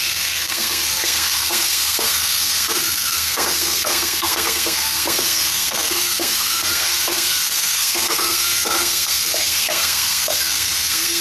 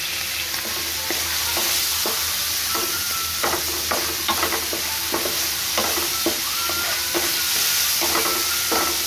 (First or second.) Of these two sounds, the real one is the second